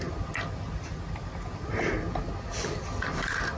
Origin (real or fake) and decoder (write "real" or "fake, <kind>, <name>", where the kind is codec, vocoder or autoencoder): real